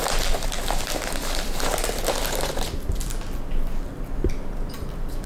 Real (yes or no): yes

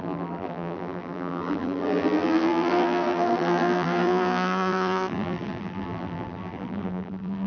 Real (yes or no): no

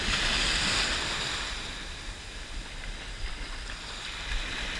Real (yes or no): yes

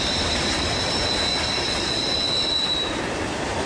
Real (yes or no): no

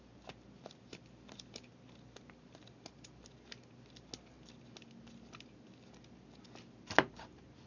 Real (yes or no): yes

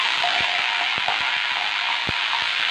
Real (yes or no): no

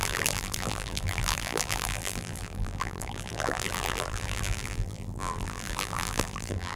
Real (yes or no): no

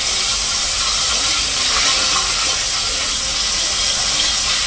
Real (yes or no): yes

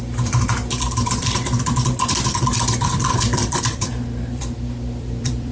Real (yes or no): no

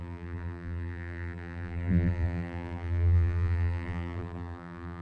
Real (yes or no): no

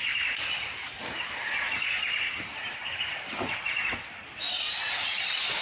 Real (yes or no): yes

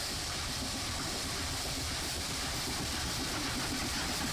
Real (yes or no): no